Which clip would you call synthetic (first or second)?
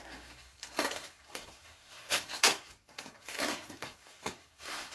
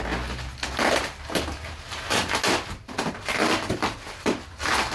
first